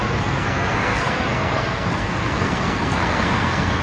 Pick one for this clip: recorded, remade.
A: remade